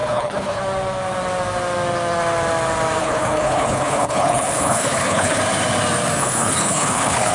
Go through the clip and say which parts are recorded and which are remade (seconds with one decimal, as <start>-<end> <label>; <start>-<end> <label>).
0.0-0.6 remade; 0.6-3.0 recorded; 3.0-5.4 remade; 5.4-6.2 recorded; 6.2-7.3 remade